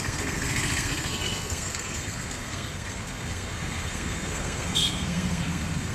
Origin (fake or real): fake